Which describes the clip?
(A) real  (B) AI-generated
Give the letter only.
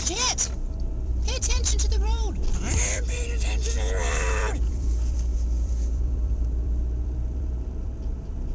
B